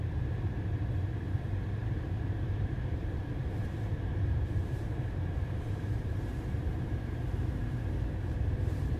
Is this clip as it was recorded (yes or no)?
no